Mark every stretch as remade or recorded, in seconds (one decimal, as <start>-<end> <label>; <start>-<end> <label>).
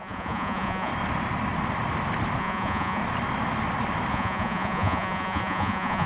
0.0-0.9 remade; 0.9-2.4 recorded; 2.4-3.0 remade; 3.0-4.1 recorded; 4.1-6.1 remade